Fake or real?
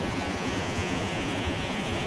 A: fake